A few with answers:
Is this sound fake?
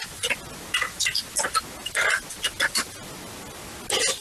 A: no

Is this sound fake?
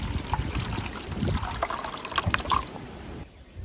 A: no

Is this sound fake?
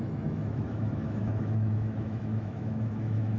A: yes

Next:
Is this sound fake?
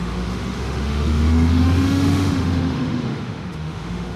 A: yes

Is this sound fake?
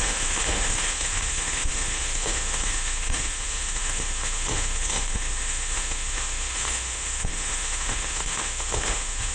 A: yes